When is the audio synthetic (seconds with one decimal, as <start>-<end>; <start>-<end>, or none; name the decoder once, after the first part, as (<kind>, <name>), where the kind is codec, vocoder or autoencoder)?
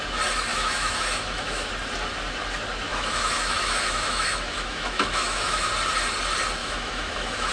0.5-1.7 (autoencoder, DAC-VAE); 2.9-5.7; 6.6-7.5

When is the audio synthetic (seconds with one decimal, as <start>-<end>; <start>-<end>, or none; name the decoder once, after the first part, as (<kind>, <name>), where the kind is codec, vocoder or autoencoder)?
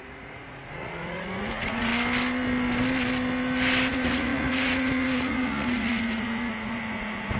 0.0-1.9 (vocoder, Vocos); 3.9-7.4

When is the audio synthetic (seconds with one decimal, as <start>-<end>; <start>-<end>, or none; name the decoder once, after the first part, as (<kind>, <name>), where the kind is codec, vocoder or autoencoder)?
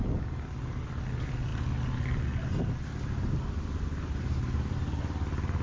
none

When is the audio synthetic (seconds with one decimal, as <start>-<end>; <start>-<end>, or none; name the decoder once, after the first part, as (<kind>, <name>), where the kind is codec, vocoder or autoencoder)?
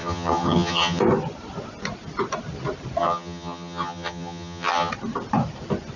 0.0-1.0 (vocoder, HiFi-GAN); 3.0-4.9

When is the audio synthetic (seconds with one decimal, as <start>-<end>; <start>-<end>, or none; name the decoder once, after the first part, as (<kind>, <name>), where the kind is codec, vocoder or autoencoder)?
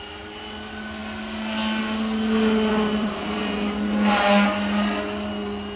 2.7-3.4 (vocoder, BigVGAN v2)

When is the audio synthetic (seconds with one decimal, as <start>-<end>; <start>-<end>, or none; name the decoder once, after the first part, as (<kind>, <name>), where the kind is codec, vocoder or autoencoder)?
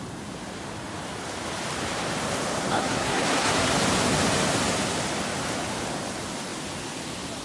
2.8-3.7 (codec, SNAC)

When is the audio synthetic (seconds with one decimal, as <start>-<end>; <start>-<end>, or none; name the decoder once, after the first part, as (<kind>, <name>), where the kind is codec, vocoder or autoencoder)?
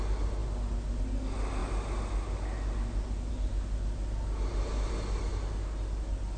none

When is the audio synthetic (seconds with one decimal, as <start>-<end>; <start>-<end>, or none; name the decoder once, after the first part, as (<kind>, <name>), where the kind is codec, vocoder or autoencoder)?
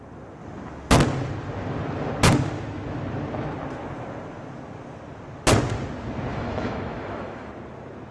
6.3-7.5 (autoencoder, DAC-VAE)